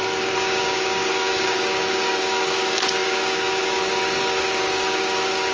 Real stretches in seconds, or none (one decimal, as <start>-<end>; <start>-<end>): none